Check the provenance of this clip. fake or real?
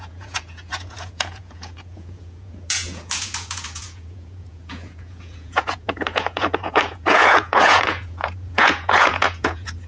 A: fake